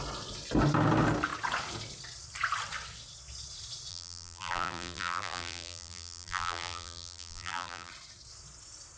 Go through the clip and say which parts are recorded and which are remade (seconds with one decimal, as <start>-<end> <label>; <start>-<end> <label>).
0.0-3.9 recorded; 3.9-7.9 remade; 7.9-9.0 recorded